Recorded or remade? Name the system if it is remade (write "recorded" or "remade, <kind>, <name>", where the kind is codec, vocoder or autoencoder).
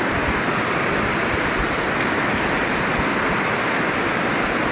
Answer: recorded